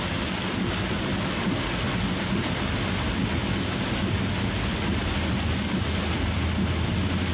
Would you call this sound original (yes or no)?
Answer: yes